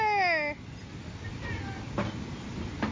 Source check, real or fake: real